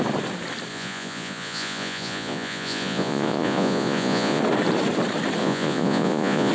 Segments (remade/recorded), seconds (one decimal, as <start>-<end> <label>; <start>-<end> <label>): 0.0-0.7 recorded; 0.7-4.4 remade; 4.4-5.4 recorded; 5.4-6.5 remade